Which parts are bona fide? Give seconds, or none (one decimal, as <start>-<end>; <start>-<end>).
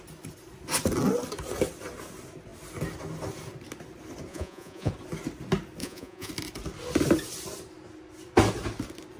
0.0-4.3; 4.9-5.8; 6.3-9.2